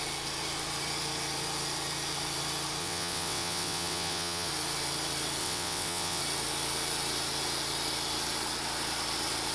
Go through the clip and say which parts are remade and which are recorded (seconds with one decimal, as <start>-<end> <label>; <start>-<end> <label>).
0.0-2.8 recorded; 2.8-4.5 remade; 4.5-5.4 recorded; 5.4-6.2 remade; 6.2-9.5 recorded